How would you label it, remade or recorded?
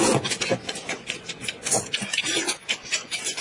remade